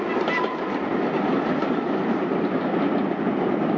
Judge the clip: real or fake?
real